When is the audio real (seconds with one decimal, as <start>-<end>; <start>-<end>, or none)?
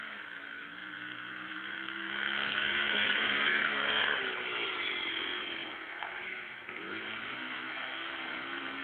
4.1-5.1